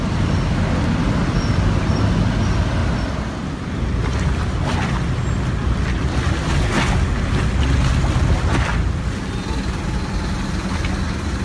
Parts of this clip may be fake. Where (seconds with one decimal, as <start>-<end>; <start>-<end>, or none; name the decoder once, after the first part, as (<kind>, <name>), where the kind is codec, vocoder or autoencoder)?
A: 2.8-3.3 (vocoder, BigVGAN v2)